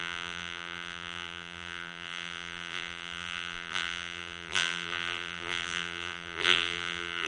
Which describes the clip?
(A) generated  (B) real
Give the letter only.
A